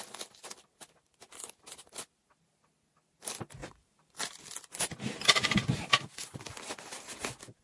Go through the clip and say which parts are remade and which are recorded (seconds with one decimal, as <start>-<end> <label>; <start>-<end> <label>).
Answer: 0.0-3.6 recorded; 3.6-4.2 remade; 4.2-5.6 recorded; 5.6-6.4 remade; 6.4-7.6 recorded